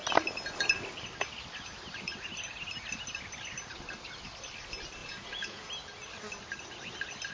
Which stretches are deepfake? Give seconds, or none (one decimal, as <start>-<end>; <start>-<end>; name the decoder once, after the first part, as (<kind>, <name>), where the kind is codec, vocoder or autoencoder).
5.0-5.7 (vocoder, Vocos)